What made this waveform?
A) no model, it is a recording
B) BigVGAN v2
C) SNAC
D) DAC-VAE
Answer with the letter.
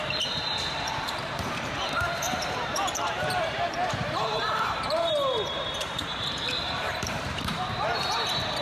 B